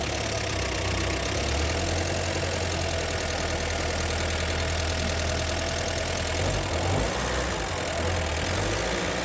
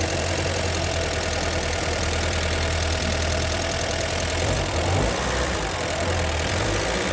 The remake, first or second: second